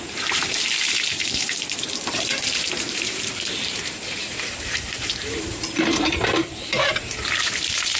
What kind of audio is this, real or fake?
fake